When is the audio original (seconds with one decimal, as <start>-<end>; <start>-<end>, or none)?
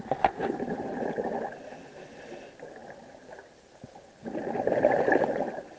0.0-5.8